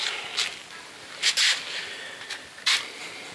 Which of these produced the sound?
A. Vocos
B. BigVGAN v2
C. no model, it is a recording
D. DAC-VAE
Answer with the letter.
C